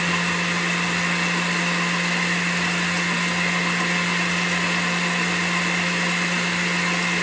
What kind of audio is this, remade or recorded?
recorded